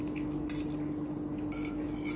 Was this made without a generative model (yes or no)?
yes